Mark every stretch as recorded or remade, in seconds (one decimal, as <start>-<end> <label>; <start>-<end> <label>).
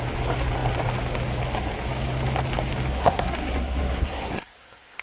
0.0-2.9 recorded; 2.9-5.0 remade